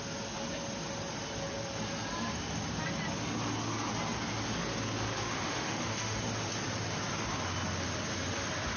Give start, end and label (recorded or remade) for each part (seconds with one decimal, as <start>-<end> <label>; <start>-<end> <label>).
0.0-5.2 recorded; 5.2-6.2 remade; 6.2-8.8 recorded